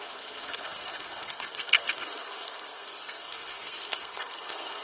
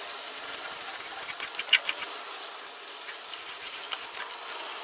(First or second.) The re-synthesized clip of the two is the first